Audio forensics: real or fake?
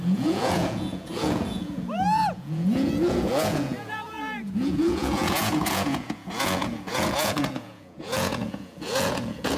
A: fake